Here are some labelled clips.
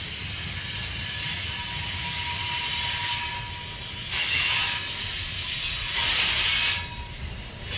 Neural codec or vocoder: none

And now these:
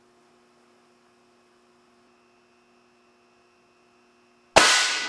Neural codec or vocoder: none